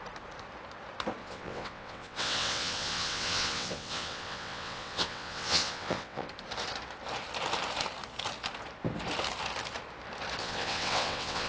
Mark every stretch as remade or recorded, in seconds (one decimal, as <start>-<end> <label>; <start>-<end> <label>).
0.0-1.2 recorded; 1.2-6.3 remade; 6.3-10.4 recorded; 10.4-11.5 remade